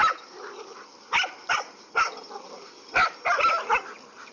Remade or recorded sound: recorded